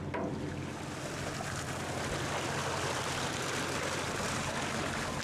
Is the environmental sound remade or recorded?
recorded